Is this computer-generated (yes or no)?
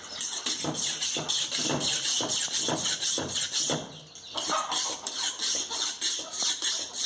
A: no